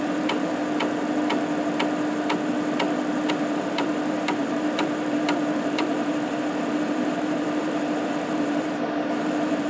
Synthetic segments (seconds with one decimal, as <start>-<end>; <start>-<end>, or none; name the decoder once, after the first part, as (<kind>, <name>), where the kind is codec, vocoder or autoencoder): 0.0-0.6 (vocoder, BigVGAN v2); 3.3-9.7